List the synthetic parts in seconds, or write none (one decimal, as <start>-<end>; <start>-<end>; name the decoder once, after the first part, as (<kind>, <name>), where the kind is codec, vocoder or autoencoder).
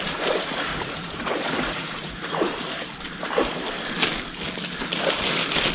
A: 0.7-2.6 (vocoder, Vocos)